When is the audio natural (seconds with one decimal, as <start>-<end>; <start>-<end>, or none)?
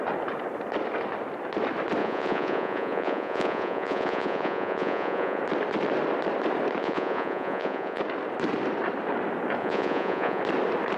0.0-2.0; 5.4-6.8; 8.0-9.6; 10.4-11.0